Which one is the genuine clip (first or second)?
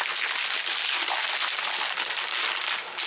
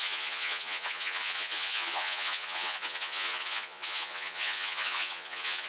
first